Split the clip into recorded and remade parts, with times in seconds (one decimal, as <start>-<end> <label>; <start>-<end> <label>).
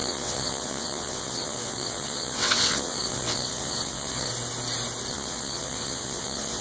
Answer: 0.0-4.3 remade; 4.3-5.1 recorded; 5.1-6.6 remade